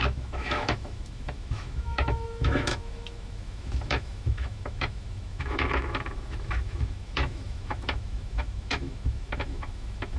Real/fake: fake